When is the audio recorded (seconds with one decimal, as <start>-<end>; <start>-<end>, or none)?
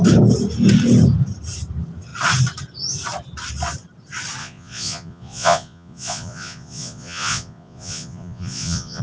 0.0-4.4